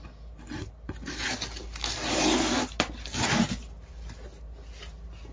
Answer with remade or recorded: recorded